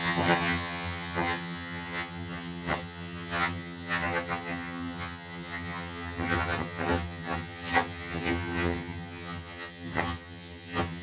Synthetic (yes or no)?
yes